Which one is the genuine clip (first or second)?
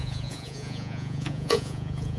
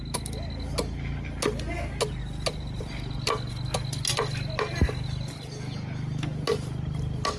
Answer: second